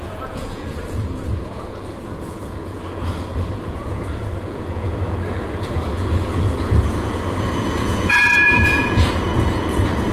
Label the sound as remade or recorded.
remade